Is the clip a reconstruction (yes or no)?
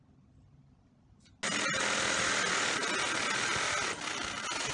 no